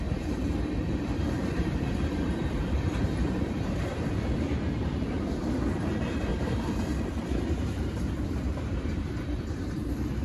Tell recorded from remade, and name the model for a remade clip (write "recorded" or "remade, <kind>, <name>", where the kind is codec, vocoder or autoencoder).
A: remade, vocoder, BigVGAN v2